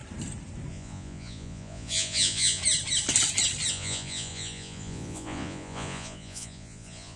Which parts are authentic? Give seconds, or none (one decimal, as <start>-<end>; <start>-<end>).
0.0-0.7; 2.6-3.7